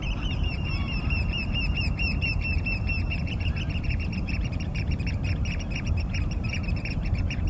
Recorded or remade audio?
remade